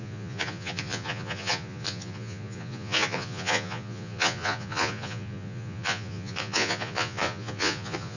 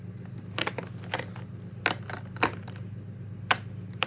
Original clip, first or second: second